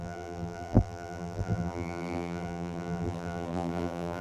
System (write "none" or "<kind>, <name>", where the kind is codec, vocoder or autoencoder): vocoder, BigVGAN v2